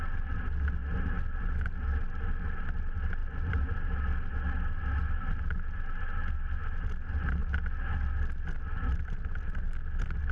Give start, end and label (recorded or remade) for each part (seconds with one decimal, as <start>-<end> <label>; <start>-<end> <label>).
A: 0.0-10.3 recorded